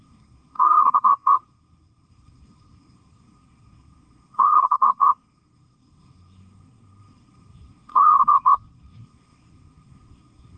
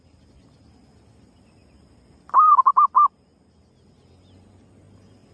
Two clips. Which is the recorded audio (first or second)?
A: second